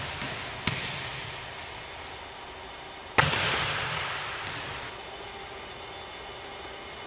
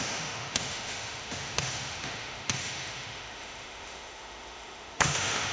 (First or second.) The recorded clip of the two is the first